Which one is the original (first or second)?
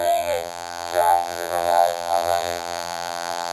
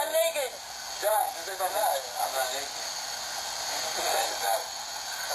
second